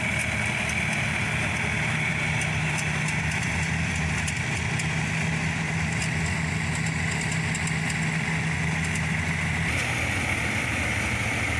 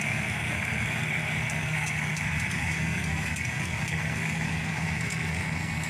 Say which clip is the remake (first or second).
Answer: second